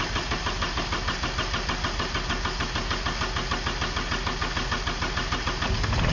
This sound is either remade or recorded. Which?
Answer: recorded